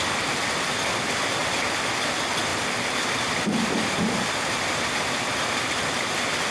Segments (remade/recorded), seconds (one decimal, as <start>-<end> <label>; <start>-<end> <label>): 0.0-1.4 recorded; 1.4-1.9 remade; 1.9-6.5 recorded